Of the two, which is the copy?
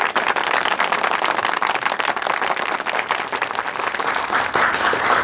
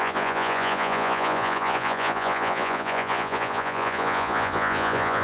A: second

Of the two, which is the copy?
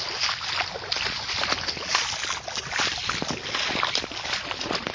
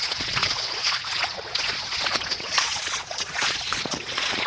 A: second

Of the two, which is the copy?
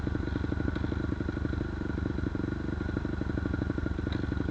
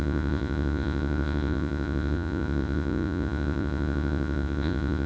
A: second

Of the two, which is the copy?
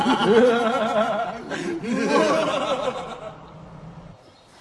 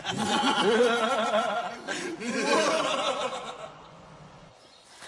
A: second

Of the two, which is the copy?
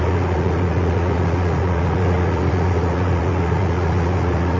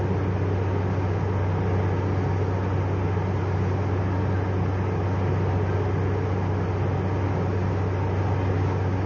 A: first